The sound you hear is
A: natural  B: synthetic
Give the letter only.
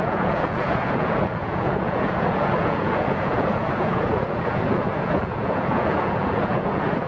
B